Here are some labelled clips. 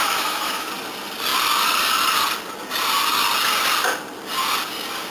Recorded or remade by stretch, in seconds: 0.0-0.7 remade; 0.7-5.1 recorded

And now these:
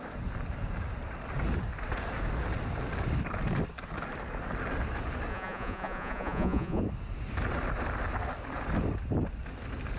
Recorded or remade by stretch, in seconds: 0.0-5.3 recorded; 5.3-6.8 remade; 6.8-10.0 recorded

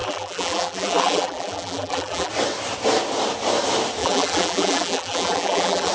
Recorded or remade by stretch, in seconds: 0.0-2.3 remade; 2.3-4.0 recorded; 4.0-5.9 remade